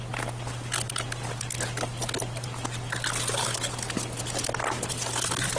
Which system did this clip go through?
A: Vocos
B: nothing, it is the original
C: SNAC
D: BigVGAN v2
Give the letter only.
B